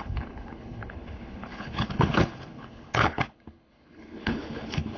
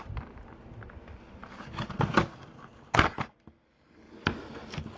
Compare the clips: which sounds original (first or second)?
second